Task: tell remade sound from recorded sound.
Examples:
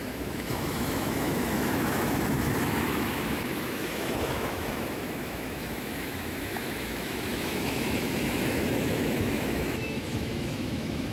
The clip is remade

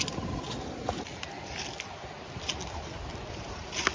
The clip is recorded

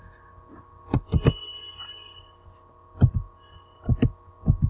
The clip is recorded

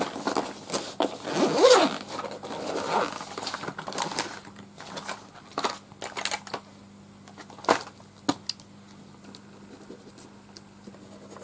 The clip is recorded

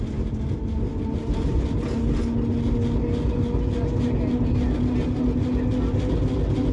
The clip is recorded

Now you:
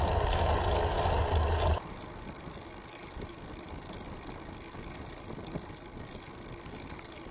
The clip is recorded